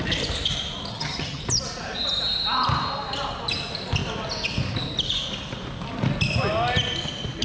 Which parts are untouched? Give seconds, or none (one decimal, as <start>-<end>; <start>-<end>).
0.0-0.9; 1.4-7.4